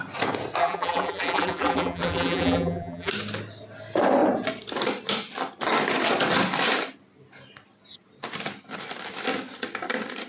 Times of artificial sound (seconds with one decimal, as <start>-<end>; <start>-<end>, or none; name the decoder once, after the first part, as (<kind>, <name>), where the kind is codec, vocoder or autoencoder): 0.6-3.1 (vocoder, BigVGAN v2)